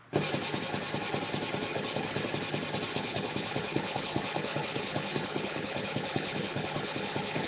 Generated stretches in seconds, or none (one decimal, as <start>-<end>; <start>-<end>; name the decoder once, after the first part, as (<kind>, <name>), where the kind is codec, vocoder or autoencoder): 1.7-2.3 (codec, HILCodec); 2.9-7.5